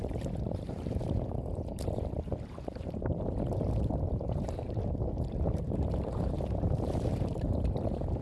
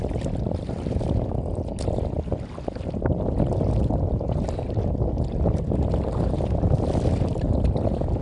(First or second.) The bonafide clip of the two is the second